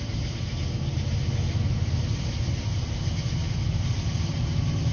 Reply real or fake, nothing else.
real